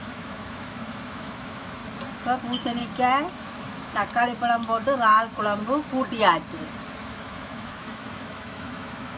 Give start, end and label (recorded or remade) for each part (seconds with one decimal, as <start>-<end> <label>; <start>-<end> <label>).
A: 0.0-1.8 remade; 1.8-2.4 recorded; 2.4-2.8 remade; 2.8-3.3 recorded; 3.3-5.3 remade; 5.3-7.0 recorded; 7.0-9.2 remade